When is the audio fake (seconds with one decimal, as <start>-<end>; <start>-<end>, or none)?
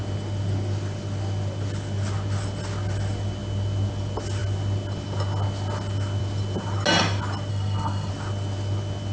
7.5-8.1